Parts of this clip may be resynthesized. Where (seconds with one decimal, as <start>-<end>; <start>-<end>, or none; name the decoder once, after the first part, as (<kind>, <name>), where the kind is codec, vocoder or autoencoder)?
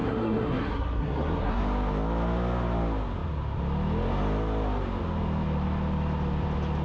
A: 0.0-1.6 (codec, SNAC)